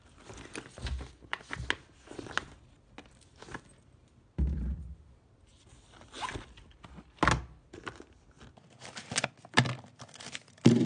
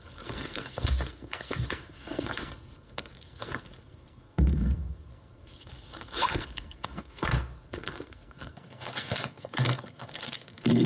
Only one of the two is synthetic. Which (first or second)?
second